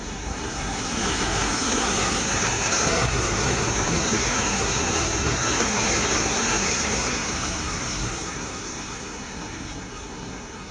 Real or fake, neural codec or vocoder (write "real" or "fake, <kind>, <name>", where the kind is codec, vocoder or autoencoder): fake, codec, SNAC